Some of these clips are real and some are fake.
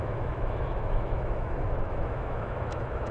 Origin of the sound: fake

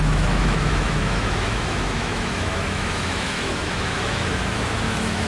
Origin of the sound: fake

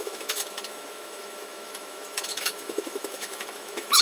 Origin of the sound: fake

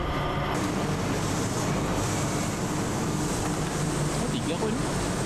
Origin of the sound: real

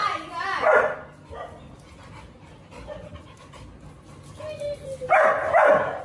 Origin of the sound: real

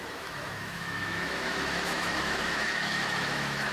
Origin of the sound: fake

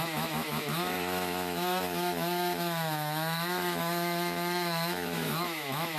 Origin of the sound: fake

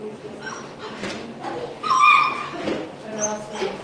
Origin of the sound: real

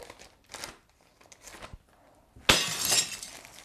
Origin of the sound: real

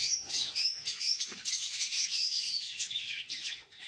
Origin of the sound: fake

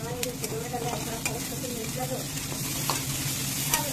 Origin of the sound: real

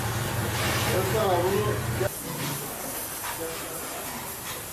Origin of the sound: real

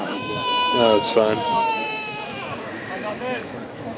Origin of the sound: fake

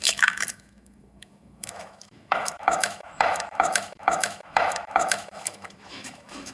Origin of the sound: fake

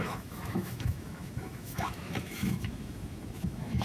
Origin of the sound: fake